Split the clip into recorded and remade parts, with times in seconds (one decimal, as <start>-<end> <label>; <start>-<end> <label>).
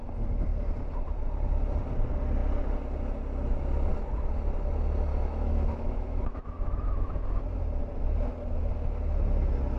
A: 0.0-5.1 recorded; 5.1-7.1 remade; 7.1-9.8 recorded